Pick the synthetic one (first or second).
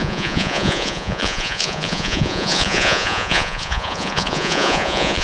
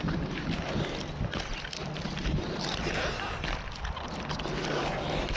first